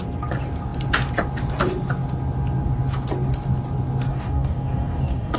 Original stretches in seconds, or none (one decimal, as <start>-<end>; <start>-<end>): 0.0-4.1